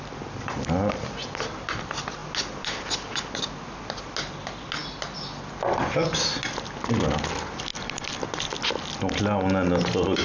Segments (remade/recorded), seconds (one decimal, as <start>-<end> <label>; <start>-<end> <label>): 0.0-10.2 recorded